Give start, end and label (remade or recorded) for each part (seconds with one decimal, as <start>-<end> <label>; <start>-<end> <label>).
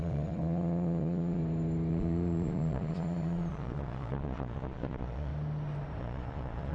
0.0-1.4 remade; 1.4-1.9 recorded; 1.9-5.3 remade; 5.3-6.0 recorded; 6.0-6.7 remade